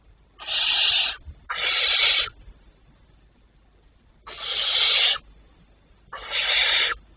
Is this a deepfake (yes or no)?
no